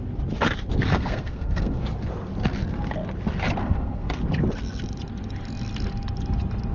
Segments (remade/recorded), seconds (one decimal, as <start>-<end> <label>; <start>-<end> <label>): 0.0-0.9 recorded; 0.9-1.8 remade; 1.8-3.6 recorded; 3.6-4.2 remade; 4.2-6.7 recorded